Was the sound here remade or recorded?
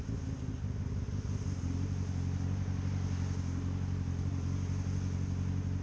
recorded